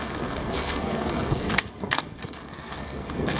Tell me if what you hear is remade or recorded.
remade